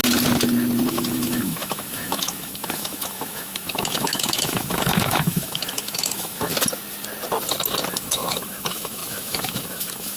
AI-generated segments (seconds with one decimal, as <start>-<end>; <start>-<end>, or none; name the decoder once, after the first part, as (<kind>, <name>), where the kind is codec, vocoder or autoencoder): 0.9-6.5 (autoencoder, DAC-VAE); 7.9-10.2